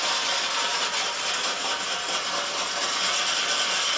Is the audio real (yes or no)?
yes